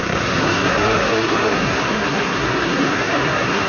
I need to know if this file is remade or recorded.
remade